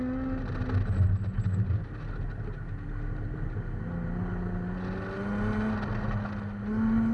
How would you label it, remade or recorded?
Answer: recorded